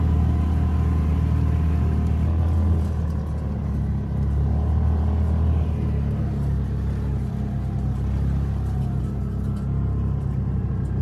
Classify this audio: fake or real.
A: real